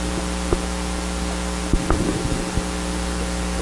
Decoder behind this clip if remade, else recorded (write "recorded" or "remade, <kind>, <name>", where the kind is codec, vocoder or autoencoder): recorded